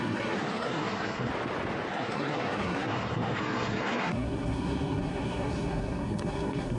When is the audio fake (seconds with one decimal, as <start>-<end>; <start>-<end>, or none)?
0.0-1.3; 1.9-6.8